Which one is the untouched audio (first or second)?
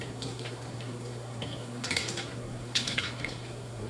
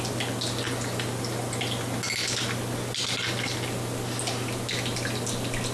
second